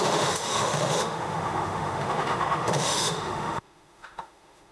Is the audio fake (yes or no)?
yes